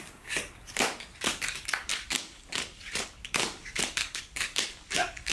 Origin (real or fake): fake